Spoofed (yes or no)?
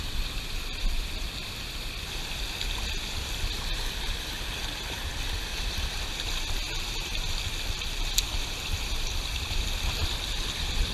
yes